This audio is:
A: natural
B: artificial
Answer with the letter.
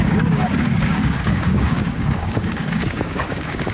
B